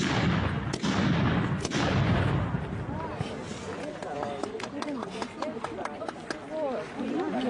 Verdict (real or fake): real